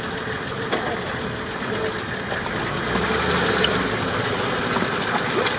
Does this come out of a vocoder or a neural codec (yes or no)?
no